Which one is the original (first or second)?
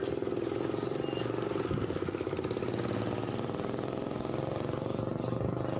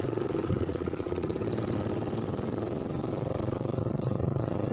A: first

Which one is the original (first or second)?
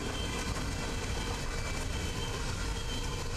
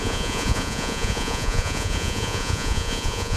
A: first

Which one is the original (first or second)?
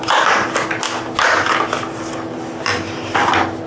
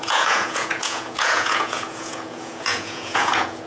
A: first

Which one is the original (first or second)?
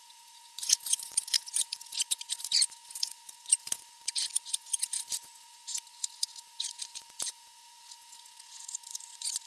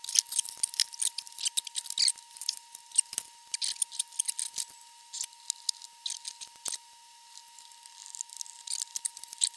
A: second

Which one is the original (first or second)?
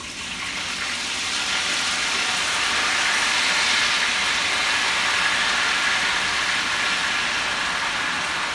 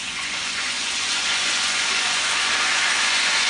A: first